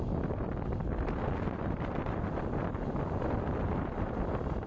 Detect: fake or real real